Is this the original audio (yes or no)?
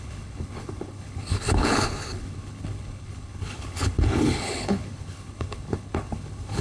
no